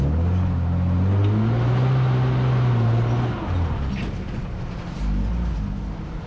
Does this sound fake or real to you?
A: real